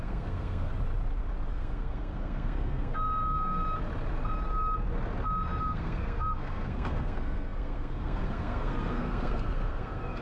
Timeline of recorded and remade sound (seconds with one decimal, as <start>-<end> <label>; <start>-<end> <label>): 0.0-0.7 remade; 0.7-1.5 recorded; 1.5-3.6 remade; 3.6-5.6 recorded; 5.6-10.2 remade